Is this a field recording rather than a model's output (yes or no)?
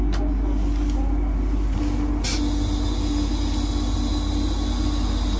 yes